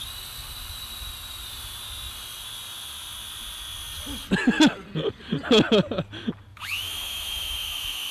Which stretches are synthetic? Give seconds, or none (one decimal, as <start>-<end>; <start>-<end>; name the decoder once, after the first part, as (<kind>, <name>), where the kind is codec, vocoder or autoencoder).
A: 6.5-8.1 (autoencoder, DAC-VAE)

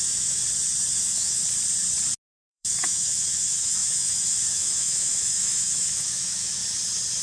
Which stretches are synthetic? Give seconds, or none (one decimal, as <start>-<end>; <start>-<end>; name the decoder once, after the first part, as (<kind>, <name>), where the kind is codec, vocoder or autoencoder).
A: 0.0-0.4 (autoencoder, DAC-VAE); 0.9-1.4; 2.4-6.6

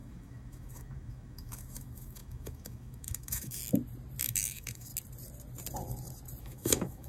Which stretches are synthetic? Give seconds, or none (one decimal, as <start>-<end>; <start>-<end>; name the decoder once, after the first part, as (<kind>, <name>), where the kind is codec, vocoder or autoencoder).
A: 0.0-3.6 (autoencoder, DAC-VAE); 4.2-4.9; 6.4-7.1